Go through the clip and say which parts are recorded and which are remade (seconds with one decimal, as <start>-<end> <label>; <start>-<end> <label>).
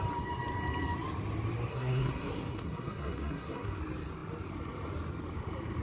0.0-1.7 recorded; 1.7-3.8 remade; 3.8-5.8 recorded